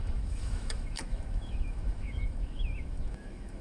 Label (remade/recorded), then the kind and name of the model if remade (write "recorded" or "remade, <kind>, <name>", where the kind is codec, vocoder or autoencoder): remade, autoencoder, DAC-VAE